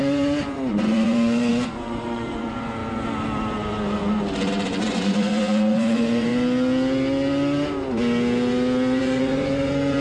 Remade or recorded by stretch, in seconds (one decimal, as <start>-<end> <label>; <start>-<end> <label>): 0.0-2.8 remade; 2.8-4.8 recorded; 4.8-6.3 remade; 6.3-9.0 recorded; 9.0-10.0 remade